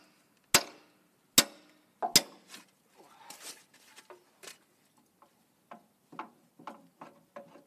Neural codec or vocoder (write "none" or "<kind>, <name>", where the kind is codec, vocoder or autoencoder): none